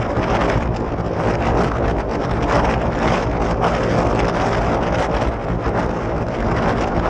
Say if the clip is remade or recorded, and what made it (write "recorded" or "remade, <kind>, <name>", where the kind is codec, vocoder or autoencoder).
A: recorded